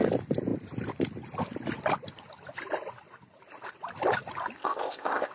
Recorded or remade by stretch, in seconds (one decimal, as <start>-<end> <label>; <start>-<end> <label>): 0.0-4.6 recorded; 4.6-5.3 remade